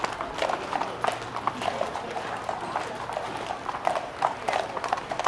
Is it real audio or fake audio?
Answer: real